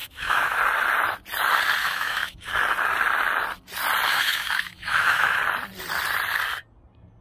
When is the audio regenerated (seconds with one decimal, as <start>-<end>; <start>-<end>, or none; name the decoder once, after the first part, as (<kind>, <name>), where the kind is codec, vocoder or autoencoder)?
0.0-0.6 (autoencoder, DAC-VAE); 1.8-2.5; 4.1-5.4